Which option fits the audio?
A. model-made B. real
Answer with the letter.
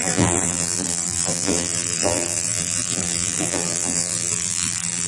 A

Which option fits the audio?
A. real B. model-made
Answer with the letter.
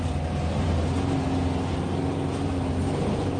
A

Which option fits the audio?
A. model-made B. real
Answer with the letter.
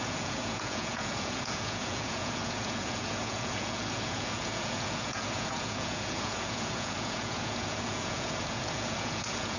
A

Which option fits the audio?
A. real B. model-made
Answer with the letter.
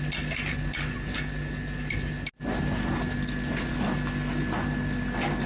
A